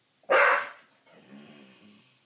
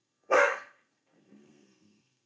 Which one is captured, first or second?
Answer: first